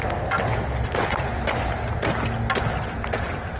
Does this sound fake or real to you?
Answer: real